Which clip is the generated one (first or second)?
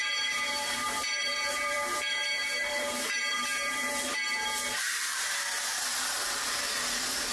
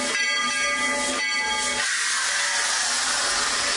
first